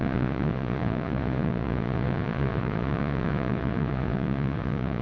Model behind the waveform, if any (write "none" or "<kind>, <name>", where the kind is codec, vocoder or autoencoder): vocoder, Vocos